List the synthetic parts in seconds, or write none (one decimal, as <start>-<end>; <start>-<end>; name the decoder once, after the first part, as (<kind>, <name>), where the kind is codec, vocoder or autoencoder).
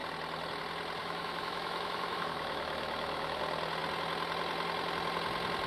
1.0-3.4 (autoencoder, DAC-VAE)